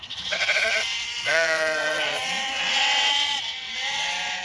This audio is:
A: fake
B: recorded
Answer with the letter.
A